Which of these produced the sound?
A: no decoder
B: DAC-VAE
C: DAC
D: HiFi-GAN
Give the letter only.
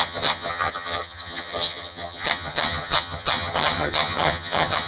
D